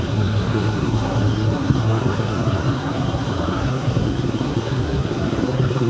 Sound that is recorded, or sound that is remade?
remade